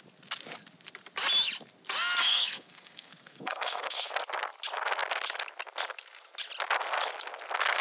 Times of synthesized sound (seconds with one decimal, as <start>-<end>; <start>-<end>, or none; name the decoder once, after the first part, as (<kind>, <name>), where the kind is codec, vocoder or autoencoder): 2.2-4.1 (codec, SNAC)